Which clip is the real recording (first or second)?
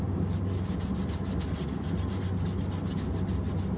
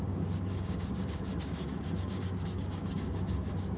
first